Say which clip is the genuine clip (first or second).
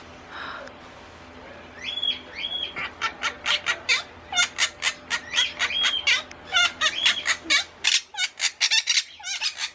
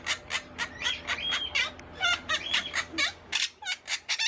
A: first